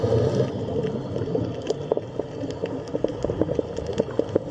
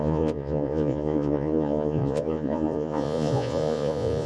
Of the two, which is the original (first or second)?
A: first